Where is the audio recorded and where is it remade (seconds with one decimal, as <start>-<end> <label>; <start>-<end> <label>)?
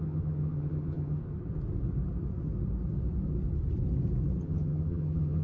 0.0-1.2 remade; 1.2-4.4 recorded; 4.4-5.4 remade